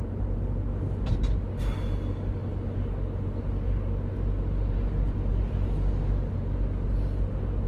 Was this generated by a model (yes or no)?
no